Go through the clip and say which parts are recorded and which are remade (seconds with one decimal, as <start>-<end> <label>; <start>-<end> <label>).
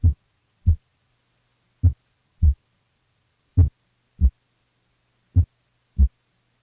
0.0-1.1 remade; 1.1-2.1 recorded; 2.1-3.5 remade; 3.5-6.6 recorded